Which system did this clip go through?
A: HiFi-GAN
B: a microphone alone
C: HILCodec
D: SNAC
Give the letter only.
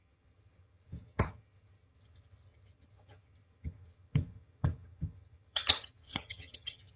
A